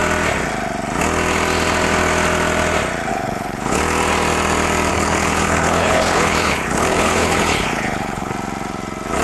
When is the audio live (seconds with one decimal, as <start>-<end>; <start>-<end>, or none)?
0.0-3.1; 3.8-4.9; 8.3-9.2